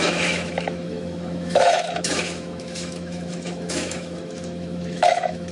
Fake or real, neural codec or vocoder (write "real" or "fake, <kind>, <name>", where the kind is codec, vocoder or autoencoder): fake, autoencoder, DAC-VAE